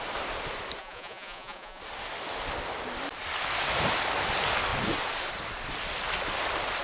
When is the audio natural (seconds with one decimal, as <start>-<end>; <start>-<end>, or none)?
0.0-0.8; 1.8-6.8